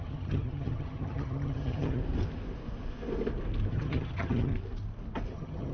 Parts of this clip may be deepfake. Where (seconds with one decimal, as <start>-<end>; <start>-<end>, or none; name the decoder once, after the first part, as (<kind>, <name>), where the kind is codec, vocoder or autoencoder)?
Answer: 0.0-2.0 (vocoder, HiFi-GAN); 3.7-4.5; 5.3-5.7